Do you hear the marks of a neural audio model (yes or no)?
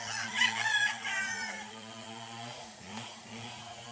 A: yes